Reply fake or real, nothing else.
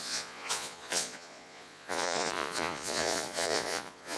fake